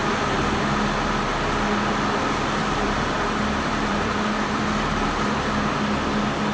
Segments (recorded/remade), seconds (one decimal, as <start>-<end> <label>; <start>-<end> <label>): 0.0-2.6 recorded; 2.6-5.4 remade; 5.4-6.5 recorded